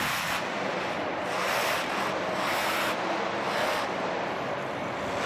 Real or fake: real